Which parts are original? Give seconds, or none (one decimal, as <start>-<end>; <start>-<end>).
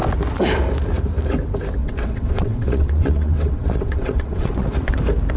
0.0-1.8; 5.0-5.4